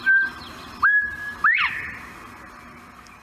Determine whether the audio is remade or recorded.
recorded